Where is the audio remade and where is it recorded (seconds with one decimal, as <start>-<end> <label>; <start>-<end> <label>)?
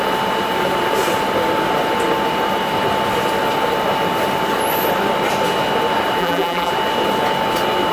0.0-6.2 recorded; 6.2-6.7 remade; 6.7-7.9 recorded